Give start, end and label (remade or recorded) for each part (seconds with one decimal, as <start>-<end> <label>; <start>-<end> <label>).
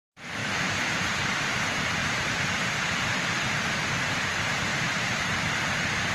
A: 0.0-0.4 recorded; 0.4-1.6 remade; 1.6-2.0 recorded; 2.0-3.5 remade; 3.5-4.7 recorded; 4.7-5.2 remade; 5.2-6.1 recorded